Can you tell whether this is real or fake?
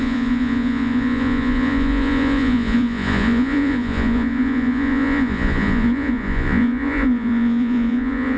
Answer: fake